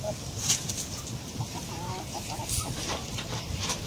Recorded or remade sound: recorded